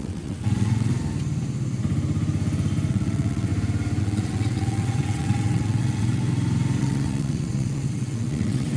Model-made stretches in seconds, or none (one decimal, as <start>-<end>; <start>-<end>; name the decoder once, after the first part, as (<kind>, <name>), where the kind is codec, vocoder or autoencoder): 0.0-0.9 (vocoder, WaveNeXt); 2.9-3.5; 4.0-6.2; 6.8-8.8